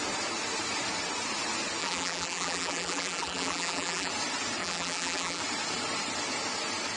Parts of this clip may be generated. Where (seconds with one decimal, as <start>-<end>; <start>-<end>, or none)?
1.8-4.1; 4.6-5.4